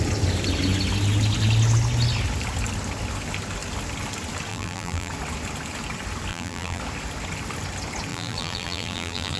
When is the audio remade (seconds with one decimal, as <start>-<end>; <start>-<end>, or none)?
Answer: 4.5-5.1; 6.3-6.8; 8.1-9.4